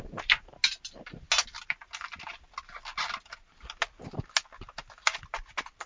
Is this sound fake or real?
real